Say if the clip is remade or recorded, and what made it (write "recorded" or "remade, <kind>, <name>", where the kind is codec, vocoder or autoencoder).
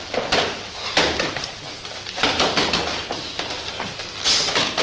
recorded